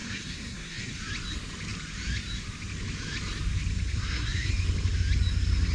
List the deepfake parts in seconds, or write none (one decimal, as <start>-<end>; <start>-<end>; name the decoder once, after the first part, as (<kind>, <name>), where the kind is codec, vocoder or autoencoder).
0.0-0.9 (codec, SNAC); 3.9-4.5